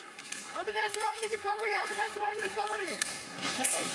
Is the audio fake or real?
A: fake